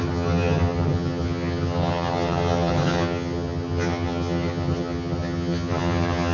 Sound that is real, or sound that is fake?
fake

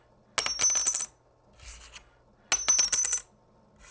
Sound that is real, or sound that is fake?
real